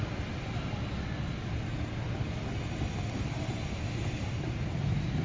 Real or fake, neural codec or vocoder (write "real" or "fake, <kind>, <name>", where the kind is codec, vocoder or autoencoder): real